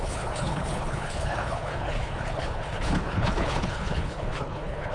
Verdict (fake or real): fake